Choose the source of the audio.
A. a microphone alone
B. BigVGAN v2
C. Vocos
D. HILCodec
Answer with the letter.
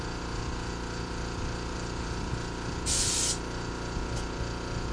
A